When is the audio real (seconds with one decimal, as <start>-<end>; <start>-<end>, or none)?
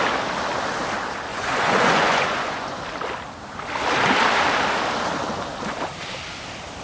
0.0-1.3; 2.8-6.8